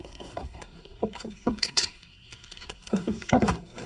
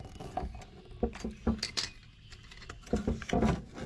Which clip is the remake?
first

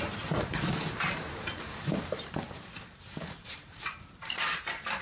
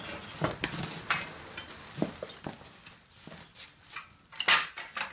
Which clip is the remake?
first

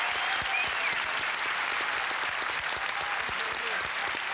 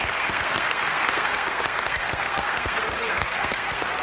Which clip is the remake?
second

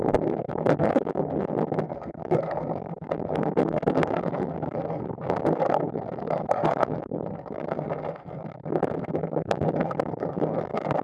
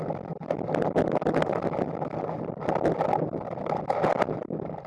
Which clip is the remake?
first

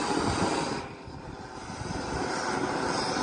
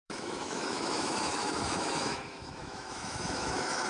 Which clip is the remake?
second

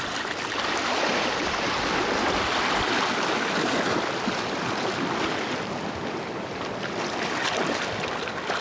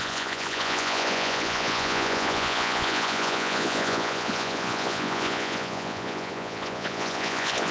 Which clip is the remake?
second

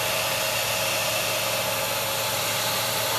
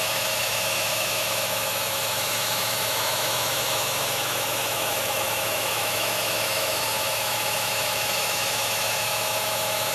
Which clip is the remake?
second